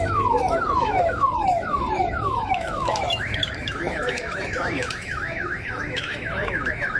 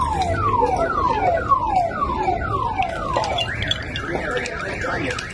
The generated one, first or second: first